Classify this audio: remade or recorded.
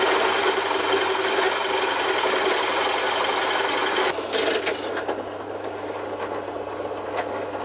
recorded